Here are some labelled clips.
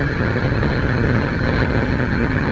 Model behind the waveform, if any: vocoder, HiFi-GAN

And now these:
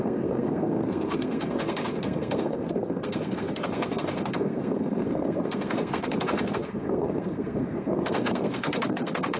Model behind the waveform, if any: codec, SNAC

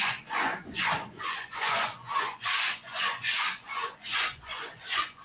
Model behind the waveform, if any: vocoder, Vocos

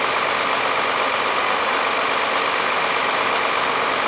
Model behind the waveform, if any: none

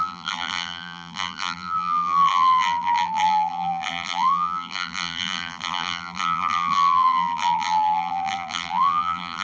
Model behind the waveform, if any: vocoder, BigVGAN v2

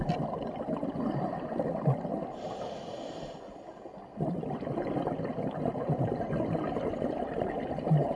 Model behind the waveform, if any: none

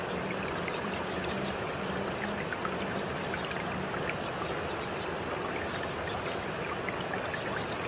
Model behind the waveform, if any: none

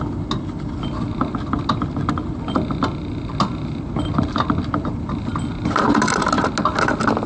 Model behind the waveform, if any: none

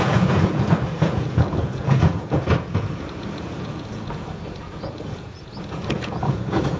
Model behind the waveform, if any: vocoder, Vocos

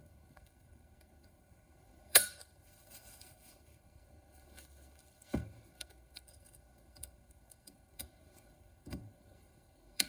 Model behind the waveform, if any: codec, SNAC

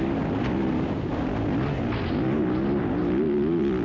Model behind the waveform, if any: none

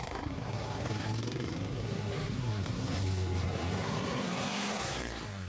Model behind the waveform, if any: codec, SNAC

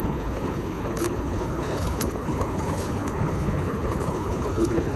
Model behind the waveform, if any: codec, HILCodec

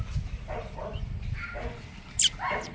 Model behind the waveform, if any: none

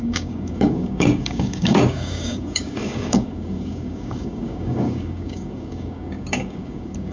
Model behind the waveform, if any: codec, DAC